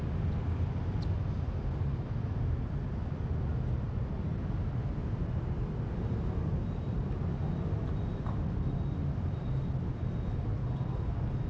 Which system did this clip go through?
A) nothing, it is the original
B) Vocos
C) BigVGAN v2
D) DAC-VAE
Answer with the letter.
A